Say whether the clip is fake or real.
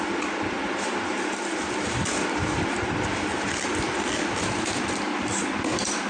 fake